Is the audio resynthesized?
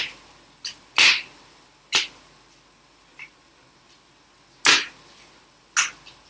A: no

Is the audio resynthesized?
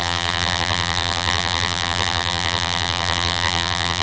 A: yes